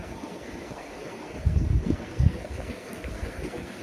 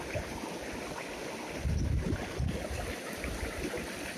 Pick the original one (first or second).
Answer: second